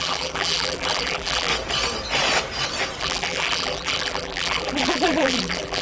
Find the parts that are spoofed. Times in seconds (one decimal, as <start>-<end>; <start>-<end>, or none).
0.0-1.5; 3.0-5.8

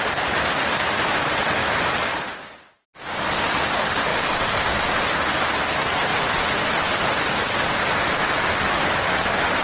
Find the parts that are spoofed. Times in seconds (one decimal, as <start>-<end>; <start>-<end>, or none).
6.1-7.6

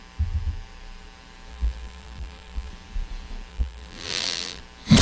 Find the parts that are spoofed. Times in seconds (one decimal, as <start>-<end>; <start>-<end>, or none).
1.5-2.7; 3.5-4.6

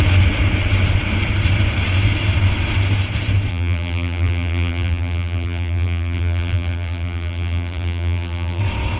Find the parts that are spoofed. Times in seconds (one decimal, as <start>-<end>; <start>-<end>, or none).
3.5-8.6

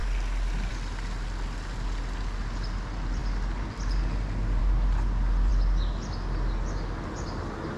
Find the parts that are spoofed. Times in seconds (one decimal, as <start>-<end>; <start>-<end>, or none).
none

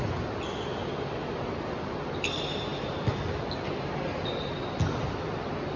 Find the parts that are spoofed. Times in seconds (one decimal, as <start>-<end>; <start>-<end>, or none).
0.7-1.9

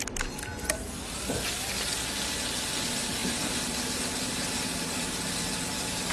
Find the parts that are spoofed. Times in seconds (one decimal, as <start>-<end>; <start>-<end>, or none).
none

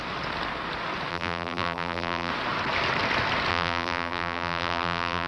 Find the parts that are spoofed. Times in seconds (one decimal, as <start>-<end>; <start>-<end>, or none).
1.1-2.3; 3.5-5.3